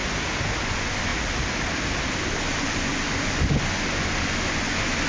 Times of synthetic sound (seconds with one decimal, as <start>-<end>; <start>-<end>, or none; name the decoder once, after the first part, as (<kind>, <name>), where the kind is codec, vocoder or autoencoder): 0.6-1.1 (vocoder, Vocos); 2.2-5.1